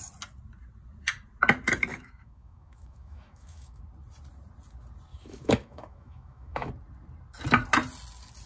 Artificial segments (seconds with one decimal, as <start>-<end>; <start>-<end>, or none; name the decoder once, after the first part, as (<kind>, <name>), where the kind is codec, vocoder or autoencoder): 1.9-3.8 (autoencoder, DAC-VAE); 5.1-6.7